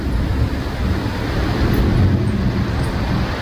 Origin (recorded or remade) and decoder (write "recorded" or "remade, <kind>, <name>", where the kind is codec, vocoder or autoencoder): recorded